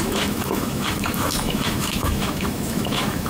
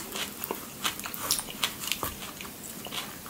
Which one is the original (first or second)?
second